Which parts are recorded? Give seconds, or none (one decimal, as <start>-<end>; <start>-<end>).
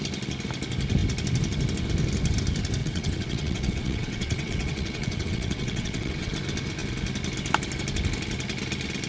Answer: 0.0-2.8; 6.3-9.1